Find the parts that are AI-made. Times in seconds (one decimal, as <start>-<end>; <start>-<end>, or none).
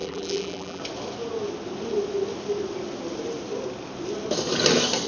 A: 0.0-0.8